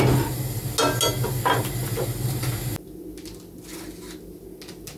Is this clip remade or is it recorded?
recorded